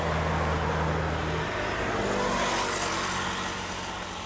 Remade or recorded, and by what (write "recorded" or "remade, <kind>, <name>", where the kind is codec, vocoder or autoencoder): recorded